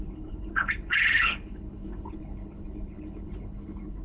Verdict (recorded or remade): remade